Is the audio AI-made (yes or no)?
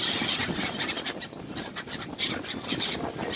yes